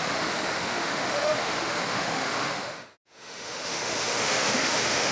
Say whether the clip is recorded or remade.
remade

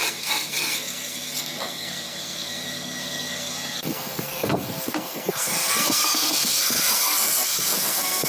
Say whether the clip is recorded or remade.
remade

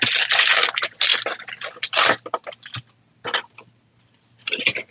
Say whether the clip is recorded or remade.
recorded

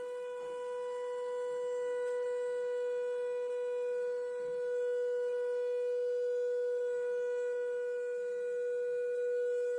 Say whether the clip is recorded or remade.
recorded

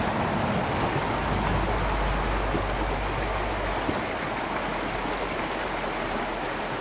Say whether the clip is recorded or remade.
recorded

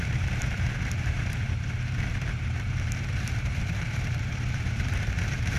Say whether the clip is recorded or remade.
remade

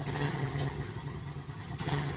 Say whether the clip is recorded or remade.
remade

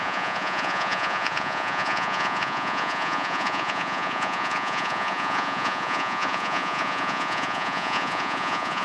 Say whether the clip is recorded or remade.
remade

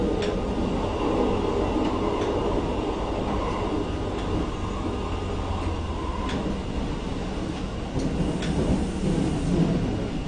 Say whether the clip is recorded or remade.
recorded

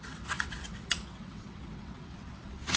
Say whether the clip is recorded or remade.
remade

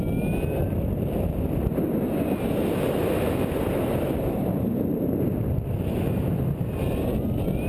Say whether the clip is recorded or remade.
recorded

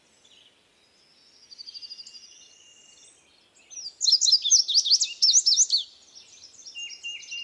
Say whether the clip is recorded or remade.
recorded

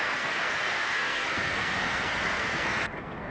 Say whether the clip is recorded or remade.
remade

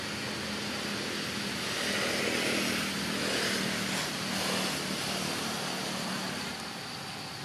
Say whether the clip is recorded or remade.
recorded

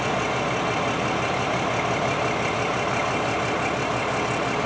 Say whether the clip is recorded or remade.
recorded